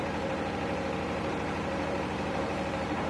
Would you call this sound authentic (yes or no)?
no